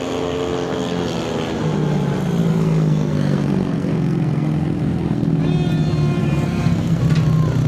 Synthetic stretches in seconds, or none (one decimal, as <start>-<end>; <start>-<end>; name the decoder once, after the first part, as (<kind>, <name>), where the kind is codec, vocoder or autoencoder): 2.5-5.4 (codec, SNAC); 6.2-7.0